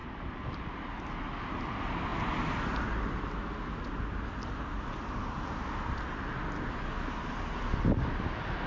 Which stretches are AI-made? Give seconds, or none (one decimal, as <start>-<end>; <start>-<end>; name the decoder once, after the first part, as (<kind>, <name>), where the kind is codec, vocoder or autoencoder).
none